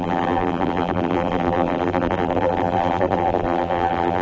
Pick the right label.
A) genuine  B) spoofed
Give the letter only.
B